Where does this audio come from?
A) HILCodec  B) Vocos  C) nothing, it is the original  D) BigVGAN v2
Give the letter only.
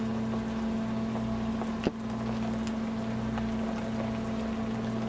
C